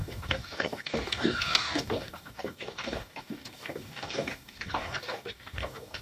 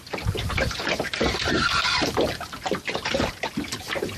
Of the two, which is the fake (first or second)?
first